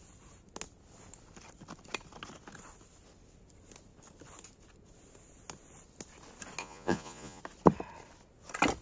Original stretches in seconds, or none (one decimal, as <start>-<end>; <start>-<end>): 0.0-6.6; 7.4-8.8